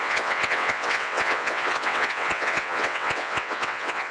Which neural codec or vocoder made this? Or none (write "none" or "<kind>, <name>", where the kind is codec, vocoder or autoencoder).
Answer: vocoder, WaveNeXt